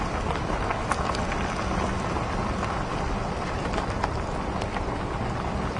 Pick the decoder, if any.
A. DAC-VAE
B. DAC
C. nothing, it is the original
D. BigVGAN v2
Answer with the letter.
C